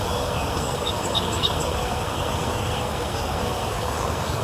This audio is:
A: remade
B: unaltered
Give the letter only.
A